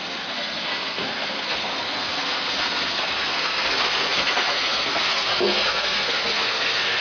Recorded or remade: remade